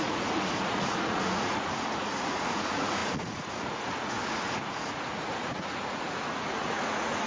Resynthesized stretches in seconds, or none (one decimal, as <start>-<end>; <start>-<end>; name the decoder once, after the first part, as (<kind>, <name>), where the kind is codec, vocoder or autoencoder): 0.0-7.3 (vocoder, Vocos)